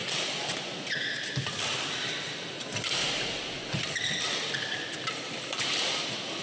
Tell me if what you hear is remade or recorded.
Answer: recorded